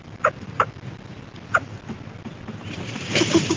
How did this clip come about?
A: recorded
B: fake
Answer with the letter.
B